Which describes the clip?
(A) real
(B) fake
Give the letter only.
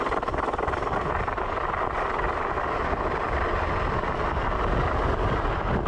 A